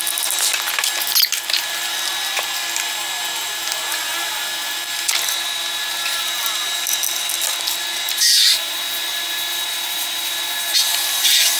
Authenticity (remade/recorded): recorded